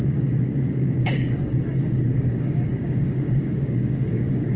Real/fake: fake